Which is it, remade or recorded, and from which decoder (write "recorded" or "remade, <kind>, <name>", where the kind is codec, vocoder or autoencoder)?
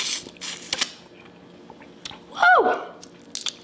recorded